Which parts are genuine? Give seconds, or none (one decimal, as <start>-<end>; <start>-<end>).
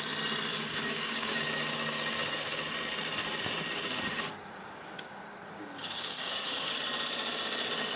0.0-0.5; 1.4-4.1; 6.8-8.0